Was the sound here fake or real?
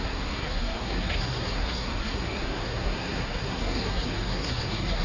fake